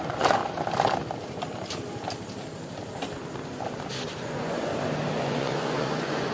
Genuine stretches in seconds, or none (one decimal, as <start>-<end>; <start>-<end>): 0.4-4.2; 4.7-5.2